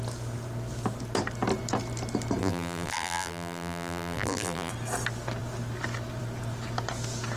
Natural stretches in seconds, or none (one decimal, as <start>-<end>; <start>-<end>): 0.0-2.4; 4.7-7.4